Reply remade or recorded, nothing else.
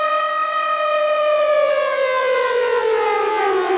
remade